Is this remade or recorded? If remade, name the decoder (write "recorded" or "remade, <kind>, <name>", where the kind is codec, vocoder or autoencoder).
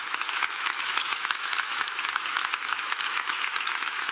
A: remade, autoencoder, DAC-VAE